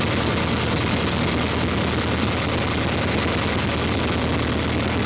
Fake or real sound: real